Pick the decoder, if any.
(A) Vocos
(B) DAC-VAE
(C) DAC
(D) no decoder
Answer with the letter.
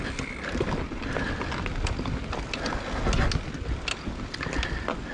D